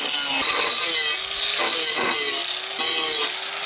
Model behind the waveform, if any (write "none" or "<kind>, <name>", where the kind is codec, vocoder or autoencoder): none